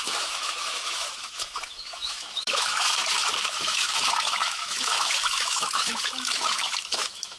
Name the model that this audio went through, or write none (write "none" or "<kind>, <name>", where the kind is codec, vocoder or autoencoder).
autoencoder, DAC-VAE